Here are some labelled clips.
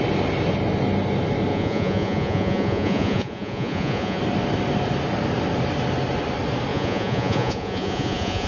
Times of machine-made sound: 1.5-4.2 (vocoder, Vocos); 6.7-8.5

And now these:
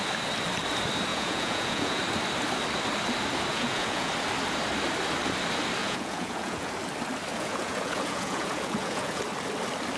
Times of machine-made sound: 1.1-2.0 (vocoder, Vocos); 3.5-4.1; 5.8-6.7; 7.3-9.2

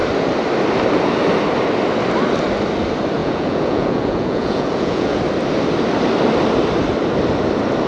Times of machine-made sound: 3.2-5.2 (vocoder, Vocos)

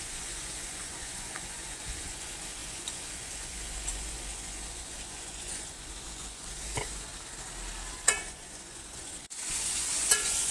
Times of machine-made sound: 0.0-7.1 (vocoder, Vocos); 7.9-10.5

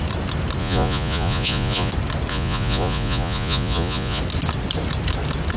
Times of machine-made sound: 0.6-1.9 (vocoder, Vocos); 2.3-4.2